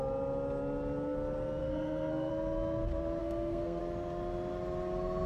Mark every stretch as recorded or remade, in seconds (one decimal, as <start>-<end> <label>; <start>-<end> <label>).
0.0-1.6 recorded; 1.6-2.3 remade; 2.3-3.2 recorded; 3.2-3.8 remade; 3.8-5.3 recorded